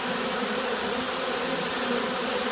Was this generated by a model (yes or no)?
no